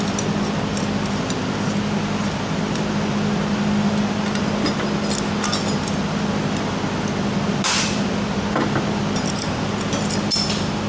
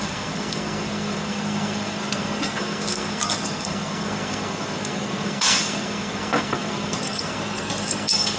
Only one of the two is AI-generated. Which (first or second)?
second